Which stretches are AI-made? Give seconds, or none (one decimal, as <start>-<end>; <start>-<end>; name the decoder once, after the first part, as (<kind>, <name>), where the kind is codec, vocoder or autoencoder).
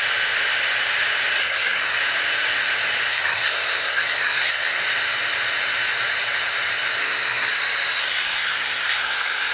1.4-2.0 (codec, SNAC); 3.1-4.8; 7.0-7.5; 8.0-9.5